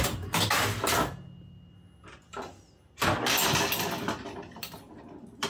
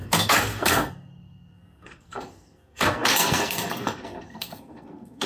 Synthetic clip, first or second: second